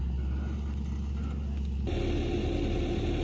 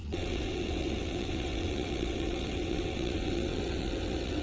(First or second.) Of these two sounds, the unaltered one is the first